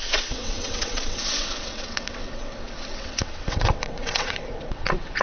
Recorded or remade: remade